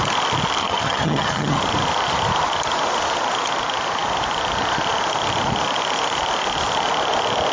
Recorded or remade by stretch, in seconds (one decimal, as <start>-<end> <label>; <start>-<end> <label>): 0.0-0.6 recorded; 0.6-1.6 remade; 1.6-7.5 recorded